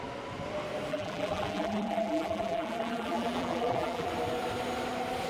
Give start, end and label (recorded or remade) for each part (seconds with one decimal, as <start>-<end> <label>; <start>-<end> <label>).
0.0-0.9 recorded; 0.9-4.1 remade; 4.1-5.3 recorded